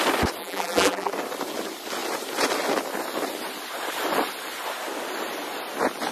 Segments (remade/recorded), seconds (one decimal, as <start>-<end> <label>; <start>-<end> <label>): 0.0-0.4 recorded; 0.4-1.1 remade; 1.1-6.1 recorded